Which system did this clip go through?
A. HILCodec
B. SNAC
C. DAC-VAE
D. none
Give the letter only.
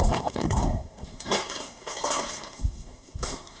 B